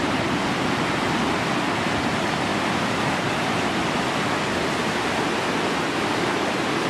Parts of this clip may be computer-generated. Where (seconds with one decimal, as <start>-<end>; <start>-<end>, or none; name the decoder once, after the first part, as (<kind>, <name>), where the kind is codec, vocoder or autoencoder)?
none